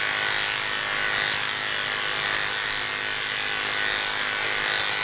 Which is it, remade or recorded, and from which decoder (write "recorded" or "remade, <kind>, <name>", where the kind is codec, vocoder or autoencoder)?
recorded